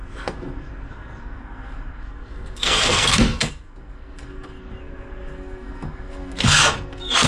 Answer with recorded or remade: remade